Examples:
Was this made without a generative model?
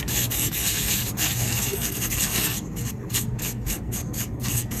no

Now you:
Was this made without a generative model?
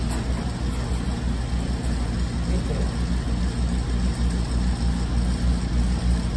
yes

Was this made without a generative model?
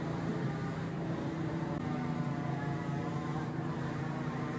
no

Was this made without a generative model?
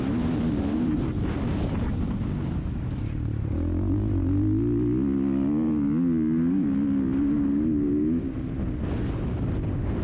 yes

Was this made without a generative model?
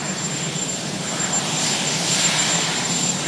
no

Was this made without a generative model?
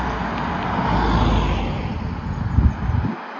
yes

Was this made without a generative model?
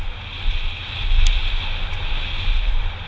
yes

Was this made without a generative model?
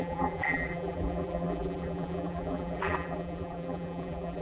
no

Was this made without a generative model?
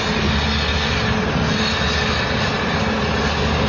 yes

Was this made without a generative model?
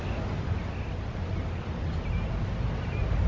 yes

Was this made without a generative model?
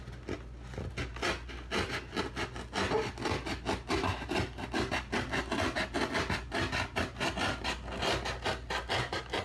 yes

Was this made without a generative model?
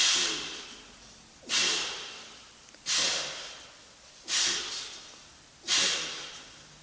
yes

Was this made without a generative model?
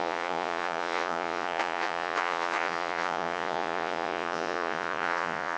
no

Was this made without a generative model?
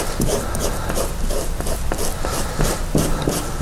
yes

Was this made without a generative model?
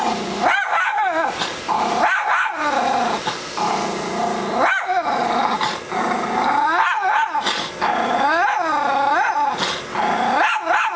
yes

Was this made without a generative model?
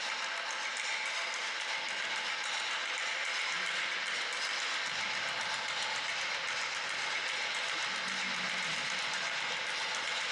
yes